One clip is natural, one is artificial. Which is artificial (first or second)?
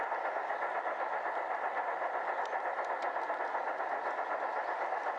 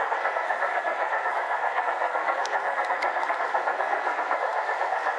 second